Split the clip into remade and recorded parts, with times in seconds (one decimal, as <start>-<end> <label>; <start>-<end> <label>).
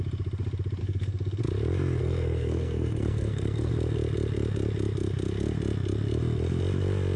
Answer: 0.0-0.8 recorded; 0.8-1.4 remade; 1.4-2.0 recorded; 2.0-3.7 remade; 3.7-7.2 recorded